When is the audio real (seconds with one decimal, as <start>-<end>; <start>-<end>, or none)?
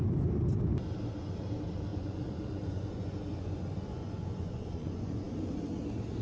0.0-1.9; 5.3-6.2